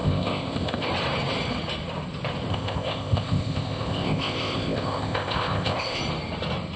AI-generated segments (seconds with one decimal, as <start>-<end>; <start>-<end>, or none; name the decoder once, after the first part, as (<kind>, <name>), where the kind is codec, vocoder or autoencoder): 0.0-0.9 (codec, ZipCodec); 2.5-6.0